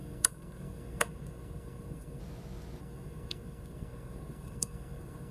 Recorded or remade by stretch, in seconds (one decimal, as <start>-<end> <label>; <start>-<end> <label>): 0.0-2.2 remade; 2.2-2.8 recorded; 2.8-5.3 remade